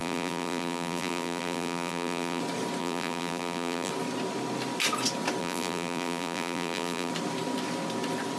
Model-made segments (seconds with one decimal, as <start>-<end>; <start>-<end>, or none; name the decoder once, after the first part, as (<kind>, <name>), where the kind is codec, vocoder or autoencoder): 0.0-2.4 (vocoder, BigVGAN v2); 2.8-3.9; 5.4-7.1